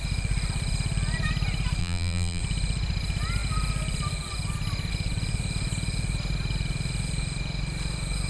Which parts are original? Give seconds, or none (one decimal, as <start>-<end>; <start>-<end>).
0.0-1.8; 2.4-8.3